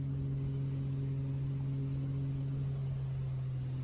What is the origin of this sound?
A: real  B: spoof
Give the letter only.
A